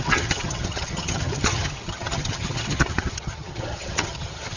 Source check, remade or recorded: remade